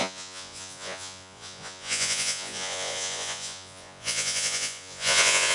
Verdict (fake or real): fake